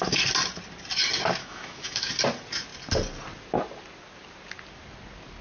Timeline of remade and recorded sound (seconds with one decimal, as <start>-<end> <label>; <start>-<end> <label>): 0.0-1.4 recorded; 1.4-2.1 remade; 2.1-5.4 recorded